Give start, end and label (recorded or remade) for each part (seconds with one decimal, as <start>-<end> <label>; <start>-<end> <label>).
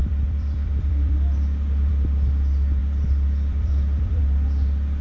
0.0-1.9 remade; 1.9-2.8 recorded; 2.8-4.2 remade; 4.2-5.0 recorded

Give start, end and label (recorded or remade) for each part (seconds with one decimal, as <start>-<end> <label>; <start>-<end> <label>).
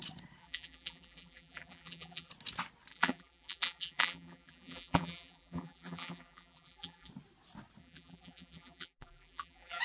0.0-0.4 recorded; 0.4-2.3 remade; 2.3-2.9 recorded; 2.9-7.1 remade; 7.1-7.8 recorded; 7.8-9.8 remade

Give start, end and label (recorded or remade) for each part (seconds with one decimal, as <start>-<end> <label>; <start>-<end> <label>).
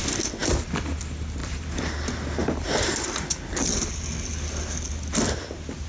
0.0-1.4 recorded; 1.4-2.0 remade; 2.0-2.4 recorded; 2.4-3.2 remade; 3.2-5.9 recorded